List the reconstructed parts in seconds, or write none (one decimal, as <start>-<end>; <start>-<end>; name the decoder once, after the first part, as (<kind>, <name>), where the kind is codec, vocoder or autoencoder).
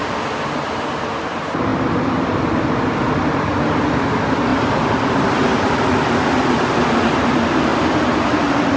1.7-2.4 (vocoder, BigVGAN v2); 4.5-5.8; 7.7-8.3